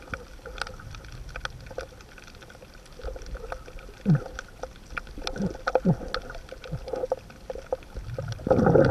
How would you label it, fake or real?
real